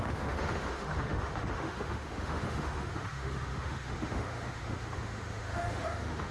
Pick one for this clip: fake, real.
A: fake